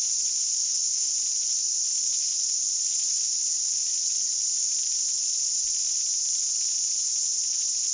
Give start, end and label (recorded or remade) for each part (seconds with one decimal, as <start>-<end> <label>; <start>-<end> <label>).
0.0-0.6 recorded; 0.6-1.1 remade; 1.1-7.9 recorded